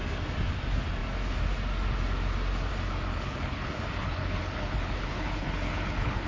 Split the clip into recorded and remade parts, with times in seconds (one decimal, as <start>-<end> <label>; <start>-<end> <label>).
0.0-3.1 recorded; 3.1-6.3 remade